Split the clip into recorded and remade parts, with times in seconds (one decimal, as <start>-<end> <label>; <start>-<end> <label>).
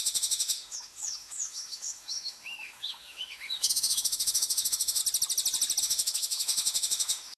0.0-5.0 remade; 5.0-5.8 recorded; 5.8-7.4 remade